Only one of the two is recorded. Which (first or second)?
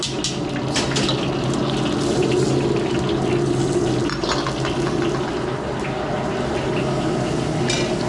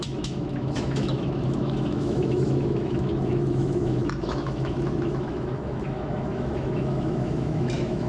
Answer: first